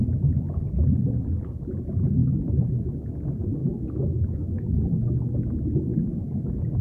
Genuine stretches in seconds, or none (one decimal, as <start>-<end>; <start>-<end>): 0.0-2.2; 2.9-3.6; 4.6-5.9